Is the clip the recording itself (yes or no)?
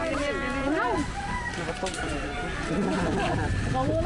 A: yes